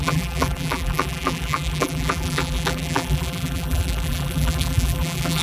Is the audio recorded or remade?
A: remade